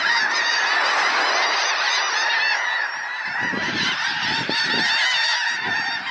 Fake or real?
real